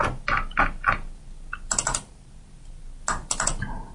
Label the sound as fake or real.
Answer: real